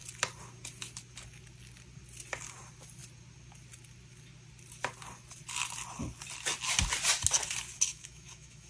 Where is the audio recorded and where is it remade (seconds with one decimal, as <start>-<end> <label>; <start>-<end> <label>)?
0.0-7.9 recorded; 7.9-8.7 remade